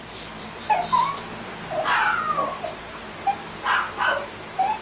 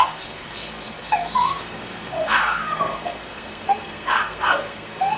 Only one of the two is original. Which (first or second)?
first